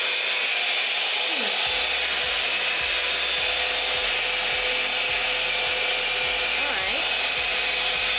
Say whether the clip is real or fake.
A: real